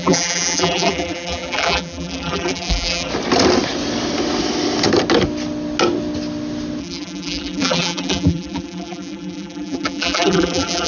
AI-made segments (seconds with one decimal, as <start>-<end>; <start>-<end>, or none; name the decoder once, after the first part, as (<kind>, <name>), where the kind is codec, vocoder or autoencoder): 0.0-3.1 (vocoder, BigVGAN v2); 6.8-10.9